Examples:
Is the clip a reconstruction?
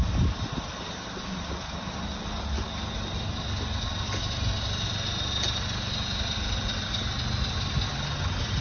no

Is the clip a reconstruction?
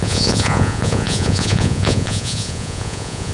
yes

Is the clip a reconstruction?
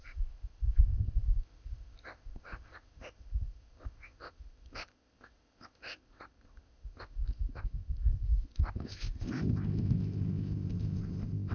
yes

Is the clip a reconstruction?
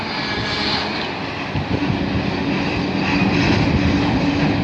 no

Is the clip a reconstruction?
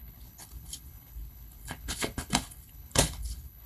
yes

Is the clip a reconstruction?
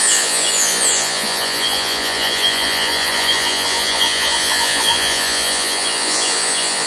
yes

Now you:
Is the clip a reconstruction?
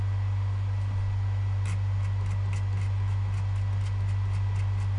no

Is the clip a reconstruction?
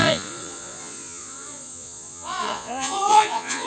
yes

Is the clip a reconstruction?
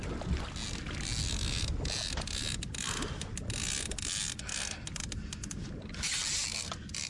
no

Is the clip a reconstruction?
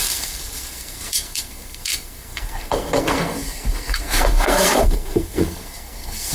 yes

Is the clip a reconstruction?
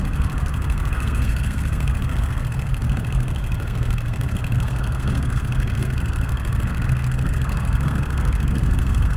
yes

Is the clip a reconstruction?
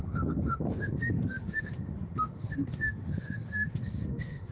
yes